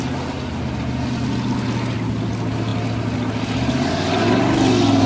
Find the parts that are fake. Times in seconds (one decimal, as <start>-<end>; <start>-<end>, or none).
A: none